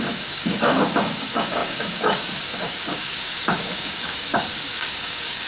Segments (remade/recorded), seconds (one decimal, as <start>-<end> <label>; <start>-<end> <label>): 0.0-5.5 remade